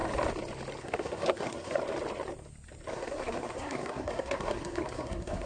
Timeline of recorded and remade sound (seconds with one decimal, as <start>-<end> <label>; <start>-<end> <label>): 0.0-0.8 recorded; 0.8-1.8 remade; 1.8-2.9 recorded; 2.9-5.5 remade